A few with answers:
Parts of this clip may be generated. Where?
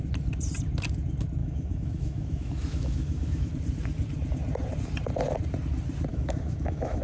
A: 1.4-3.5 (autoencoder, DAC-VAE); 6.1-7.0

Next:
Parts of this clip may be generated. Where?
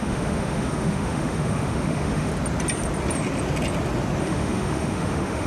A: 0.0-2.3 (autoencoder, DAC-VAE); 4.2-5.5